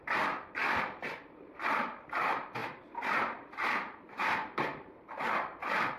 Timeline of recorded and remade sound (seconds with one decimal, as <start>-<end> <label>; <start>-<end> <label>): 0.0-2.6 recorded; 2.6-5.2 remade; 5.2-6.0 recorded